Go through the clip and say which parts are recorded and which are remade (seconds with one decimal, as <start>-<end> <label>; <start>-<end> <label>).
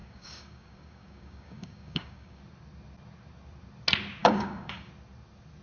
0.0-2.4 remade; 2.4-4.2 recorded; 4.2-4.9 remade; 4.9-5.6 recorded